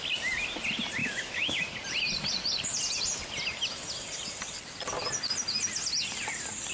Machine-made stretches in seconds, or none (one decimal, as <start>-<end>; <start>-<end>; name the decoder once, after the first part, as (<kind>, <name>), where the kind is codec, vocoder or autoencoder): 1.0-1.6 (autoencoder, DAC-VAE)